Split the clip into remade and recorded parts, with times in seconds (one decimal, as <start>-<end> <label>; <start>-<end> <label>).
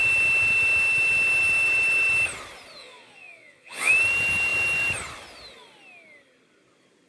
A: 0.0-2.8 recorded; 2.8-3.9 remade; 3.9-7.1 recorded